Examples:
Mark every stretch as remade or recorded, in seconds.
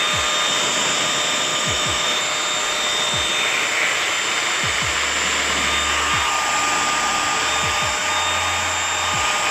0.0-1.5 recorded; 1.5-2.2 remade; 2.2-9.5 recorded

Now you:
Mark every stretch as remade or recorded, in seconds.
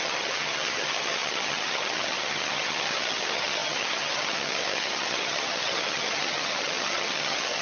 0.0-7.6 remade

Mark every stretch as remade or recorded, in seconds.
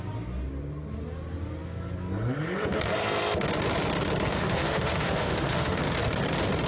0.0-4.3 recorded; 4.3-5.8 remade; 5.8-6.7 recorded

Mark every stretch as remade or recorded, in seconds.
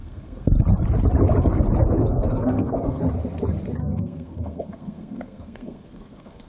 0.0-0.5 remade; 0.5-2.0 recorded; 2.0-3.0 remade; 3.0-3.8 recorded; 3.8-6.5 remade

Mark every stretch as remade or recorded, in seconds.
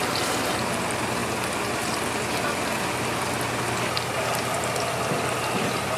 0.0-6.0 recorded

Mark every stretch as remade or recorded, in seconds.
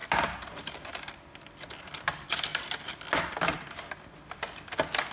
0.0-5.1 recorded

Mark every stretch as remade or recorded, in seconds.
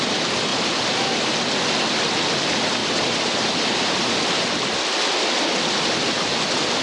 0.0-0.5 recorded; 0.5-1.3 remade; 1.3-2.8 recorded; 2.8-4.1 remade; 4.1-6.8 recorded